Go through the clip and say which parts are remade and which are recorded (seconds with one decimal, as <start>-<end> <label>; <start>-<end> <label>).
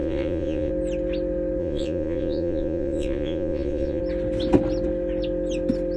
0.0-0.7 remade; 0.7-1.6 recorded; 1.6-4.0 remade; 4.0-6.0 recorded